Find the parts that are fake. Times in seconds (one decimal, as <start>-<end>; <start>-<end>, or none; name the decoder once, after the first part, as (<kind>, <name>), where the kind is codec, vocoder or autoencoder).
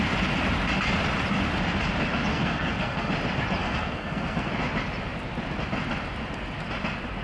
2.3-3.1 (codec, SNAC); 3.6-4.5